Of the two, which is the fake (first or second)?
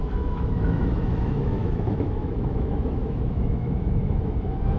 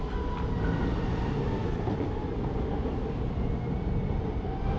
first